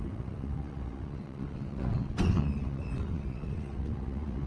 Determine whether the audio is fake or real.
fake